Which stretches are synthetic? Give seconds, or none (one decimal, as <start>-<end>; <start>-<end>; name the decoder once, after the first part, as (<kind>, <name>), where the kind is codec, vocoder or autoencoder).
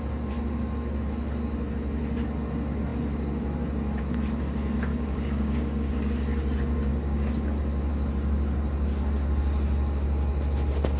4.9-5.9 (codec, DAC); 6.9-7.6